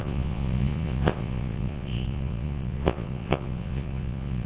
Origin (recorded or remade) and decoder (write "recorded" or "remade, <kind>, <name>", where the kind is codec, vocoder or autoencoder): remade, vocoder, Vocos